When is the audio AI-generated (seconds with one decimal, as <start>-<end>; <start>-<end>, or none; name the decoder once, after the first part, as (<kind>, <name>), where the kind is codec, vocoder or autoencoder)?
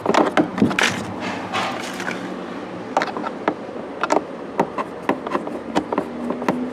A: none